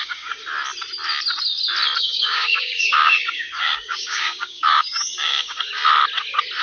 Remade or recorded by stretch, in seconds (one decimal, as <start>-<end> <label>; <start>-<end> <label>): 0.0-0.4 remade; 0.4-2.0 recorded; 2.0-5.8 remade; 5.8-6.6 recorded